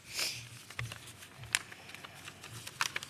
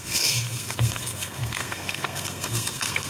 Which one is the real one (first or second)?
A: first